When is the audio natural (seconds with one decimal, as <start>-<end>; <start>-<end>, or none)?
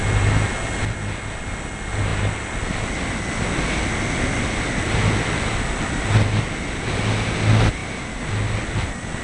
0.0-9.2